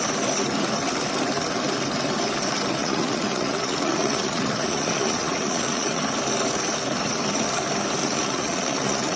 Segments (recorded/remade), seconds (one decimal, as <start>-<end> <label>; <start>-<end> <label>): 0.0-2.8 recorded; 2.8-6.0 remade; 6.0-8.0 recorded; 8.0-9.2 remade